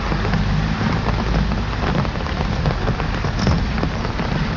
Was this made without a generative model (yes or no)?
yes